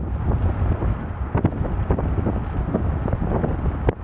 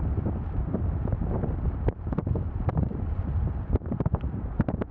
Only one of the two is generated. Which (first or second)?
second